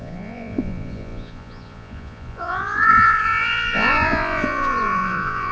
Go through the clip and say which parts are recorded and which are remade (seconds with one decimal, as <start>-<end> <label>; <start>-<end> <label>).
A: 0.0-5.5 remade